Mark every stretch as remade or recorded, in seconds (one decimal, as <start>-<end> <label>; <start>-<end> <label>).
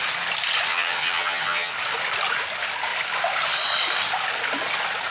0.0-0.7 recorded; 0.7-1.7 remade; 1.7-5.1 recorded